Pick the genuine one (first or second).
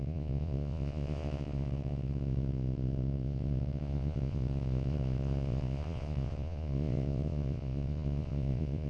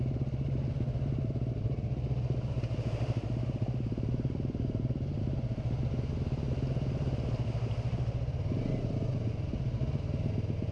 second